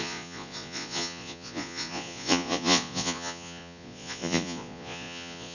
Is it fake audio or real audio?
fake